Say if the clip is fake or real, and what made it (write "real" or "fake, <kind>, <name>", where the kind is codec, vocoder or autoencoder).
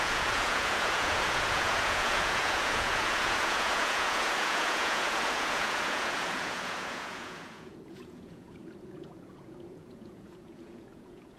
fake, vocoder, Vocos